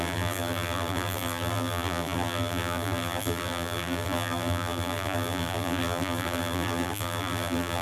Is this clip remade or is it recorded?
remade